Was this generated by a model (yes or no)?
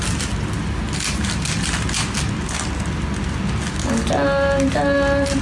no